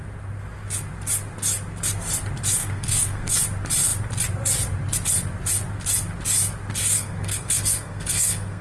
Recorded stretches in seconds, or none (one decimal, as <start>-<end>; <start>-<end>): 0.0-2.6; 3.3-6.8